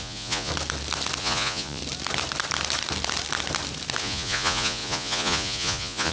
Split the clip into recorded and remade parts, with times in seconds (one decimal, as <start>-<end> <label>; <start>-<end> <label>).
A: 0.0-0.5 remade; 0.5-1.2 recorded; 1.2-1.8 remade; 1.8-4.0 recorded; 4.0-6.1 remade